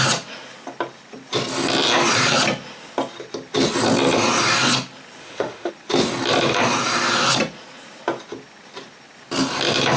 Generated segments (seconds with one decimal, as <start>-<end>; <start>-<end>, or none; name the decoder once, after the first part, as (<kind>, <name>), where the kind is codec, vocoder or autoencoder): 5.2-5.7 (autoencoder, DAC-VAE)